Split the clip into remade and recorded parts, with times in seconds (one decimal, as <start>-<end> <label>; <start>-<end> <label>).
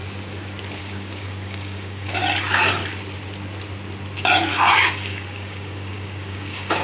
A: 0.0-0.8 recorded; 0.8-2.2 remade; 2.2-4.7 recorded; 4.7-6.8 remade